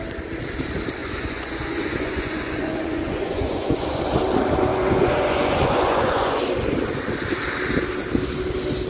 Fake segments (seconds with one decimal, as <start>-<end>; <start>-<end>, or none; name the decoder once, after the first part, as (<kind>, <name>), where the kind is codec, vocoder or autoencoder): 1.0-4.0 (vocoder, Vocos); 4.7-6.4